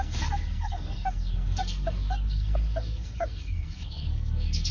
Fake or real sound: fake